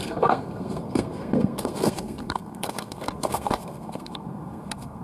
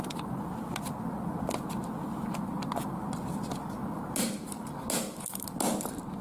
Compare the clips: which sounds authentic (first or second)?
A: second